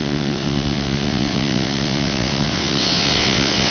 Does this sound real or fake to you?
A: fake